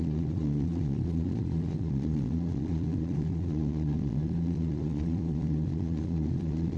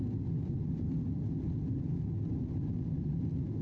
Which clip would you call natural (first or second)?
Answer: second